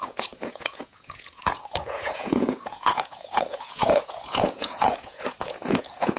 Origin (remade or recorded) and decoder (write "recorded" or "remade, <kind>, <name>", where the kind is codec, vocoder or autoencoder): remade, vocoder, Vocos